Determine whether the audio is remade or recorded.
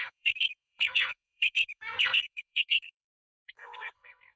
remade